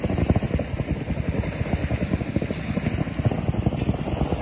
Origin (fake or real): real